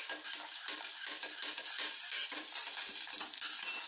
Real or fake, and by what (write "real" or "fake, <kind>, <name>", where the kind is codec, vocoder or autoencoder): real